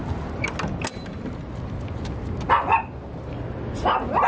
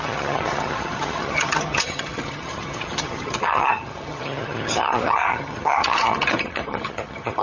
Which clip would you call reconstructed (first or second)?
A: second